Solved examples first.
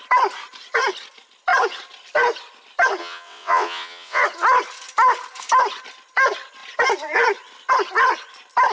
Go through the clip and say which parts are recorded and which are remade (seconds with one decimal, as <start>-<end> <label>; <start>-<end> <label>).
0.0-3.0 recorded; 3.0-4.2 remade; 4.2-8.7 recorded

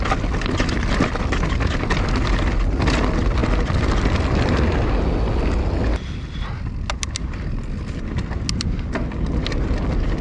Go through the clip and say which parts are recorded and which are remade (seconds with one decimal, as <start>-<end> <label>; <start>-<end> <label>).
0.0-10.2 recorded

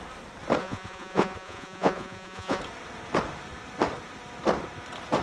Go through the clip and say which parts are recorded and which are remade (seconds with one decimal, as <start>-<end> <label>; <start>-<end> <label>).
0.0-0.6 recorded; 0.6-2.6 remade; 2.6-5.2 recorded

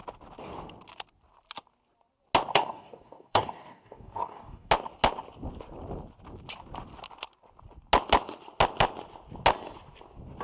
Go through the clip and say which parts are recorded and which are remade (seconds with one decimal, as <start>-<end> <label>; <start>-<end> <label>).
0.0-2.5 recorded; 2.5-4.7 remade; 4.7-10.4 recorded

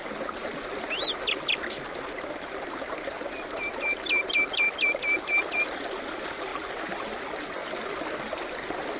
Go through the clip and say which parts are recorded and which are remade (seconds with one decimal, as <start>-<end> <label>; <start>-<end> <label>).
0.0-9.0 recorded

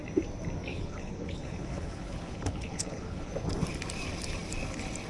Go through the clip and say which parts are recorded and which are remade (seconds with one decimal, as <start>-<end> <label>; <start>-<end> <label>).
0.0-0.7 recorded; 0.7-3.3 remade; 3.3-5.1 recorded

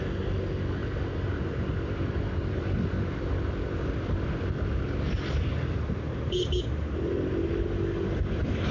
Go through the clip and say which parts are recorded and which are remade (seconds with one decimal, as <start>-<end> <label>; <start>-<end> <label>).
0.0-8.7 recorded

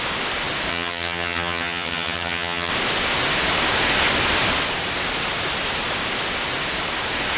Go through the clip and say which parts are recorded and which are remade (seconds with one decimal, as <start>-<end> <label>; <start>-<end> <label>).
0.0-0.7 recorded; 0.7-2.7 remade; 2.7-7.4 recorded